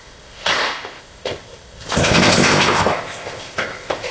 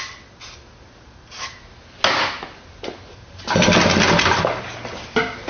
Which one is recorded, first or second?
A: second